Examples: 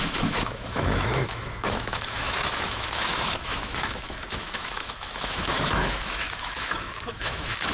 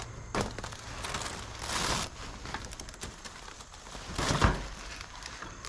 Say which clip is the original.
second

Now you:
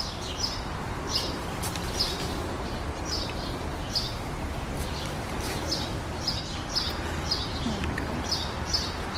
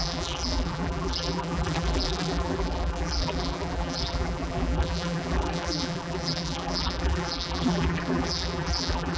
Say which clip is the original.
first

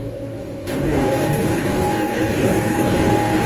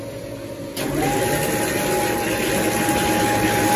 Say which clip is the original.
second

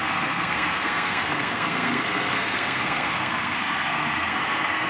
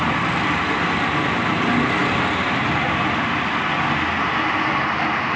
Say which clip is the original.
second